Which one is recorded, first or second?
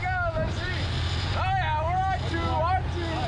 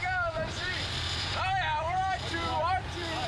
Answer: first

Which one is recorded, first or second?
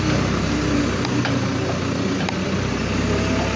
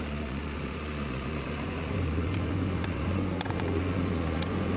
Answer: first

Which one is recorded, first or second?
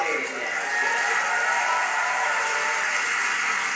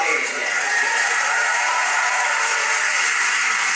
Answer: first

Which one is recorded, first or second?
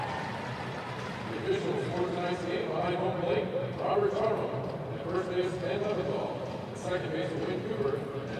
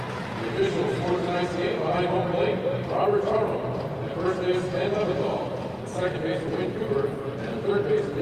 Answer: second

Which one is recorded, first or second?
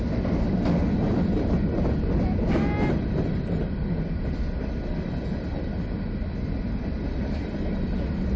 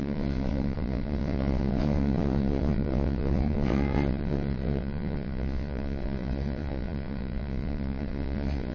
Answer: first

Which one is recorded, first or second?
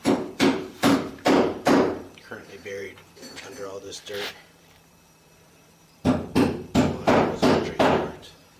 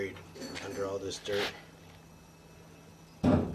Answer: second